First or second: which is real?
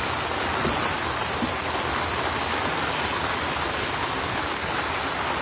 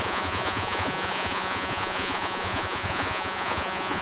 first